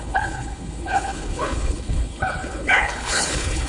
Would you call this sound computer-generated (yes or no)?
yes